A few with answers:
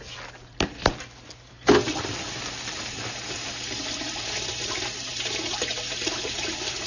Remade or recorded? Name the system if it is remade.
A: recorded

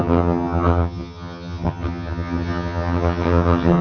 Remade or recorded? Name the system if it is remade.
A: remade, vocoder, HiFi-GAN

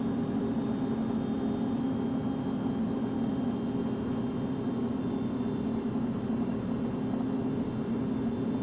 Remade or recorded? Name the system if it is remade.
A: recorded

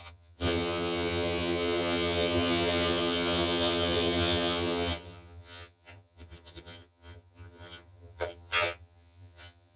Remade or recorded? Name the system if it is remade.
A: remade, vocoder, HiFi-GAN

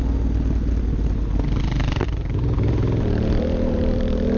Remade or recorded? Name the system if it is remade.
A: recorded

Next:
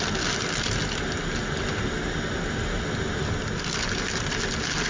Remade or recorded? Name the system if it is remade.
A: recorded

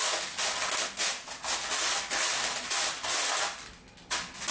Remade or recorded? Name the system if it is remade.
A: recorded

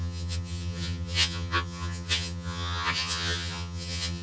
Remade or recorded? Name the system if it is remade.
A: remade, vocoder, HiFi-GAN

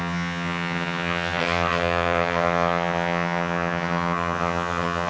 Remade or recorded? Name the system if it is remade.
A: remade, vocoder, HiFi-GAN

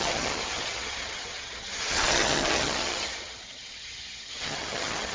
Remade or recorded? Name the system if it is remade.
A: remade, vocoder, HiFi-GAN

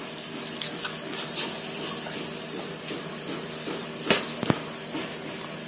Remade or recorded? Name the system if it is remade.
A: recorded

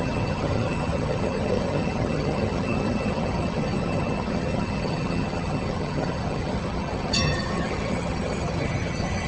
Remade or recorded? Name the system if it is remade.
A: remade, vocoder, HiFi-GAN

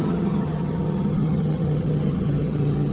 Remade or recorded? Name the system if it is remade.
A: remade, vocoder, HiFi-GAN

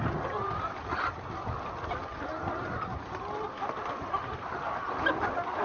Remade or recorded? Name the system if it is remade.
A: recorded